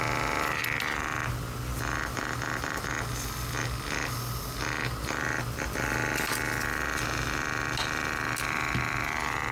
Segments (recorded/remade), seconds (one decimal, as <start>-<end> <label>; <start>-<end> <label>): 0.0-9.5 recorded

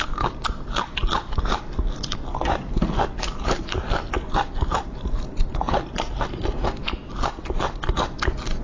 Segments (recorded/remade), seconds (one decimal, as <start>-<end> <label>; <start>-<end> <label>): 0.0-8.6 recorded

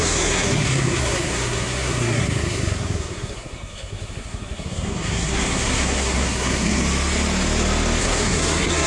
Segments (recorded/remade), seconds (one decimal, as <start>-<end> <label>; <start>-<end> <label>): 0.0-6.8 remade; 6.8-8.0 recorded; 8.0-8.9 remade

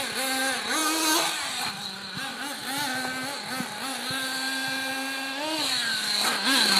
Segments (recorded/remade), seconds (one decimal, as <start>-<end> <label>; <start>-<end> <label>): 0.0-6.8 recorded

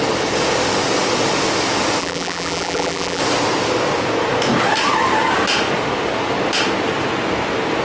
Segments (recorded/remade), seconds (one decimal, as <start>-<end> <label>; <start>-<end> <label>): 0.0-2.0 recorded; 2.0-3.2 remade; 3.2-7.8 recorded